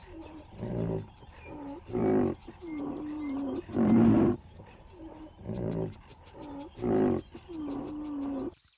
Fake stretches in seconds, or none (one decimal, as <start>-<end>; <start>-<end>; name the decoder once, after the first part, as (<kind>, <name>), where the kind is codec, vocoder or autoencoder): 0.0-2.0 (vocoder, BigVGAN v2); 2.8-6.1